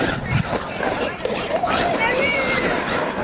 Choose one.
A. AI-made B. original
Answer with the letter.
A